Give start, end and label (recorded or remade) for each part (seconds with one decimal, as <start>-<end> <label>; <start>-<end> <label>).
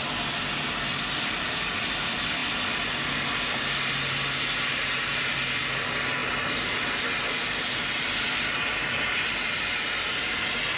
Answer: 0.0-10.8 recorded